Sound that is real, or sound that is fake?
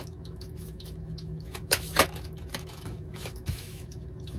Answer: fake